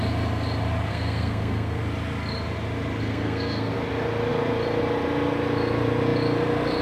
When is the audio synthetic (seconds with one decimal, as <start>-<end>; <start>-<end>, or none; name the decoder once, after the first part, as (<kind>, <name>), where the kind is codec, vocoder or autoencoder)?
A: 0.9-1.8 (codec, SNAC); 3.1-3.8